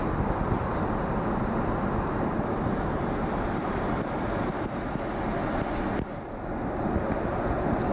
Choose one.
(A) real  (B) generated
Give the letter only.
A